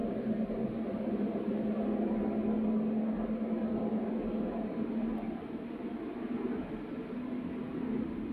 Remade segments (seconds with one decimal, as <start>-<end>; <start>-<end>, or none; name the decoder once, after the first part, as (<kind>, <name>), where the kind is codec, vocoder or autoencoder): none